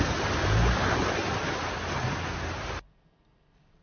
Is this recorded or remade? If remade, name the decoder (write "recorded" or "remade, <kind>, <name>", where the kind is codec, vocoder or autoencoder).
recorded